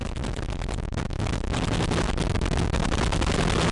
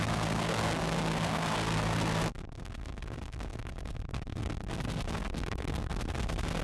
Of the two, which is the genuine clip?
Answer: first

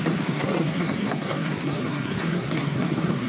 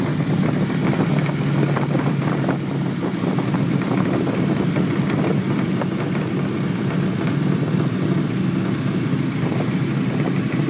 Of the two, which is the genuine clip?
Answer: second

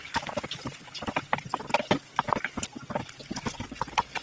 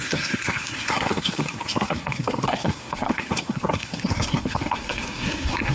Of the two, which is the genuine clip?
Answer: first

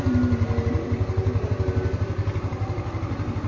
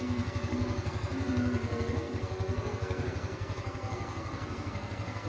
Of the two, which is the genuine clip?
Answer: first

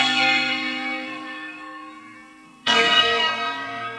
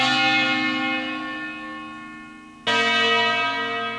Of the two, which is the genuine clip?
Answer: second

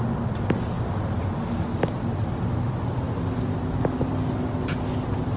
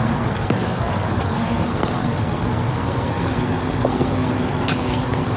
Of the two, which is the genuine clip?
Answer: first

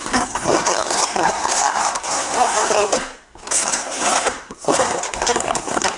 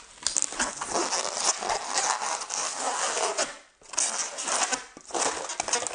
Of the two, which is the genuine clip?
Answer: second